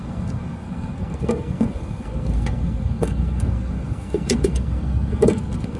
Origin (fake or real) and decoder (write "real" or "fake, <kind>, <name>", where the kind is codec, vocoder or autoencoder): fake, codec, SNAC